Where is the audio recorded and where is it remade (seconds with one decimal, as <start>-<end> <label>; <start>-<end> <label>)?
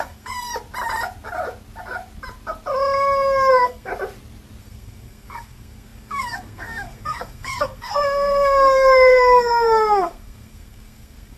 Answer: 0.0-0.5 remade; 0.5-3.5 recorded; 3.5-3.9 remade; 3.9-4.6 recorded; 4.6-11.4 remade